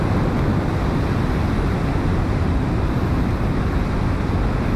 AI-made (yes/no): no